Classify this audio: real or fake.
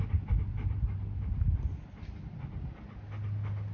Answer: real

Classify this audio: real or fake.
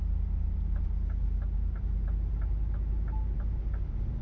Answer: real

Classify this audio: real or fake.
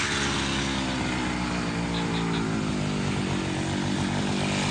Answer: real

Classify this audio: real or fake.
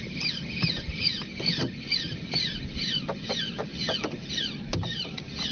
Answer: real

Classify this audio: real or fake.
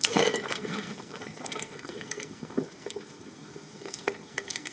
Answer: fake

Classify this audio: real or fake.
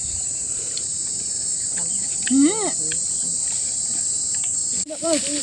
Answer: fake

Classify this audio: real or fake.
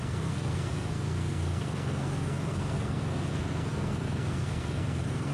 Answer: fake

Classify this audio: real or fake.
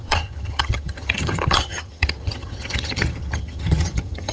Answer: fake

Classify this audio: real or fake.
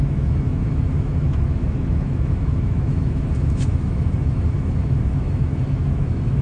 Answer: fake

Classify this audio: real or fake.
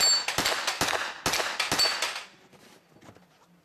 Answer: real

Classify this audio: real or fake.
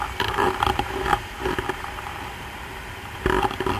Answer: real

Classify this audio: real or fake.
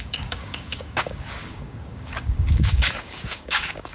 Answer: fake